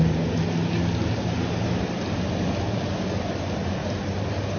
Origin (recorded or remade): recorded